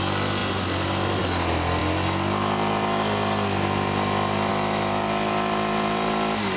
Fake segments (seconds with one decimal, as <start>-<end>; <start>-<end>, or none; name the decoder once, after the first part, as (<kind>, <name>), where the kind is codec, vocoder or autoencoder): none